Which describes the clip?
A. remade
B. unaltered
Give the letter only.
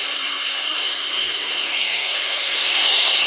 A